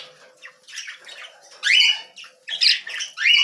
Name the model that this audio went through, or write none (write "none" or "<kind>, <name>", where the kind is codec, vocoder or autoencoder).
none